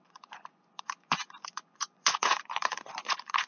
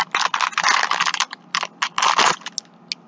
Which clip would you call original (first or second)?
second